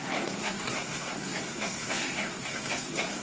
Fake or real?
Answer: fake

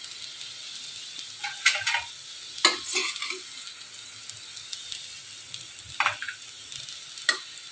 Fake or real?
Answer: real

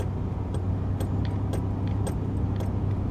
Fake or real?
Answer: real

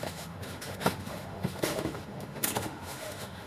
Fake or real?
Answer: fake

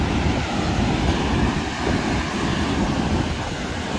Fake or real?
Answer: real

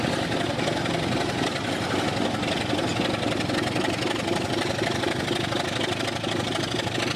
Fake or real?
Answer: real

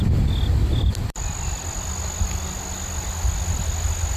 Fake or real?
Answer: real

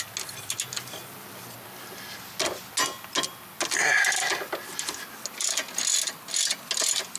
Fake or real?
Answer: real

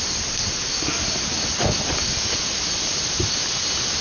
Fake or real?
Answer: real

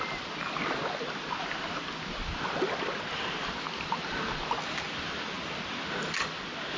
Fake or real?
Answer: real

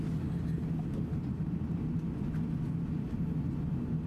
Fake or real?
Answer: real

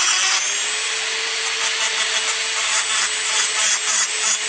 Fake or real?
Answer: real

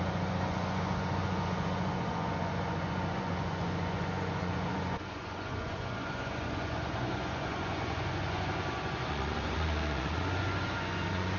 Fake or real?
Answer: fake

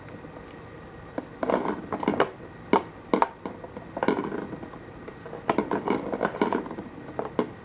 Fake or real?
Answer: real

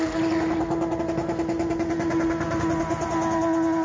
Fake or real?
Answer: real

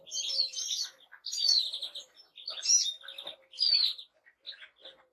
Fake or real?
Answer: real